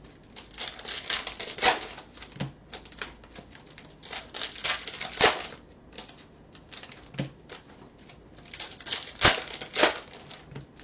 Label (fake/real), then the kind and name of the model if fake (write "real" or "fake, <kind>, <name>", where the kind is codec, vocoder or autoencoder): real